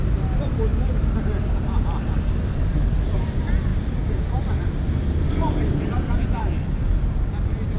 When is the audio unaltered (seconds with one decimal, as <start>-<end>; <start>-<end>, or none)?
0.7-2.1; 3.7-5.3